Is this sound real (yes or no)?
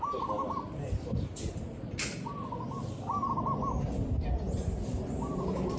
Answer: yes